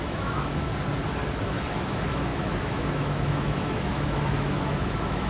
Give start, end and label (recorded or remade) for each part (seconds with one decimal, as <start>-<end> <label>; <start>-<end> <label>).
0.0-0.7 remade; 0.7-1.4 recorded; 1.4-5.3 remade